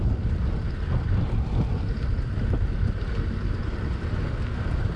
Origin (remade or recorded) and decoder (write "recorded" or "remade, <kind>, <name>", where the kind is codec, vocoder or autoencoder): recorded